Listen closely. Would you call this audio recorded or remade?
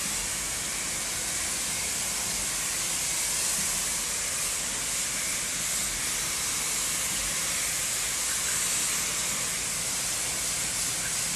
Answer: recorded